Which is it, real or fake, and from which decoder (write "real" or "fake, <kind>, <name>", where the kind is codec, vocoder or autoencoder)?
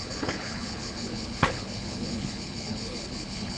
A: fake, codec, HILCodec